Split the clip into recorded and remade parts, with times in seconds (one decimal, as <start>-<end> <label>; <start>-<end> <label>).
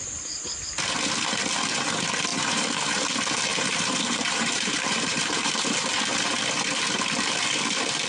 0.0-2.3 recorded; 2.3-3.1 remade; 3.1-3.5 recorded; 3.5-5.5 remade; 5.5-8.1 recorded